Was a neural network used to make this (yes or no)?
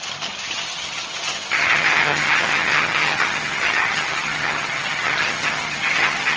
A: yes